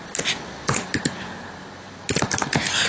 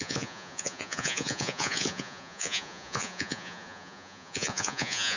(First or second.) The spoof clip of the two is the second